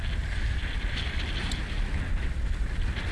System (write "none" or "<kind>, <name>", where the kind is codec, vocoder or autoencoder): none